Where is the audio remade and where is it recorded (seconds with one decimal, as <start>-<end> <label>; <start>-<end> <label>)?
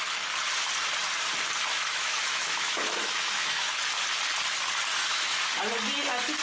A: 0.0-1.7 recorded; 1.7-3.7 remade; 3.7-4.9 recorded; 4.9-5.6 remade; 5.6-6.4 recorded